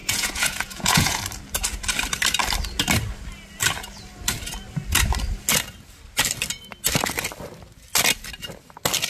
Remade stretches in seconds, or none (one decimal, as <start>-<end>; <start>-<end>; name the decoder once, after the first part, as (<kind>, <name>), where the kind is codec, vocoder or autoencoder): 0.0-1.2 (vocoder, Vocos)